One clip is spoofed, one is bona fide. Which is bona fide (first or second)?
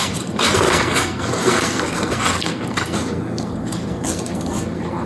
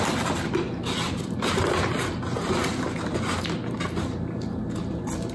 second